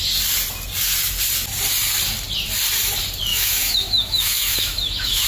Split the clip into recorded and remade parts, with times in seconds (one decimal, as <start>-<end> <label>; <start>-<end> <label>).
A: 0.0-3.3 recorded; 3.3-5.3 remade